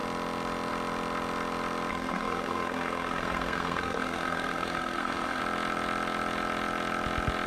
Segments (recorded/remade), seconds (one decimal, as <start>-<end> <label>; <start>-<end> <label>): 0.0-1.9 recorded; 1.9-5.4 remade; 5.4-7.5 recorded